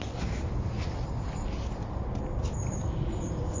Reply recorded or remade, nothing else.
recorded